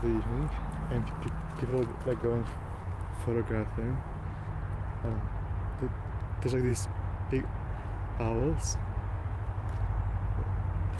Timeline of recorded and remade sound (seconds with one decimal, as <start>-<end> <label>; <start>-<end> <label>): 0.0-11.0 recorded

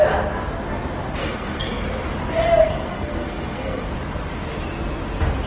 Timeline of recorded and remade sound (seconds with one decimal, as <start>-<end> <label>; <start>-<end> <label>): 0.0-1.2 recorded; 1.2-1.8 remade; 1.8-2.6 recorded; 2.6-3.9 remade; 3.9-5.5 recorded

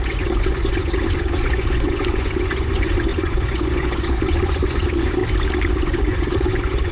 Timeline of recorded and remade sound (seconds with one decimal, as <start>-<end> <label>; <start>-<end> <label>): 0.0-5.2 remade; 5.2-5.7 recorded; 5.7-6.9 remade

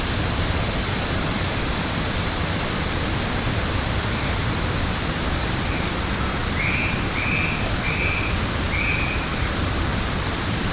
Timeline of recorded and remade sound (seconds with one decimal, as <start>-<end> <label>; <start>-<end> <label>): 0.0-10.7 recorded

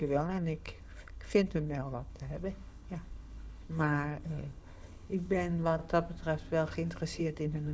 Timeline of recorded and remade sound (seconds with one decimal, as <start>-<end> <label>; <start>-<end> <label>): 0.0-5.8 remade; 5.8-7.2 recorded; 7.2-7.7 remade

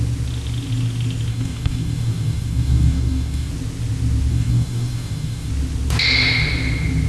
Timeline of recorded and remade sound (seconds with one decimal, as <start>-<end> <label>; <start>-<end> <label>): 0.0-1.3 recorded; 1.3-3.5 remade; 3.5-4.3 recorded; 4.3-5.5 remade; 5.5-7.1 recorded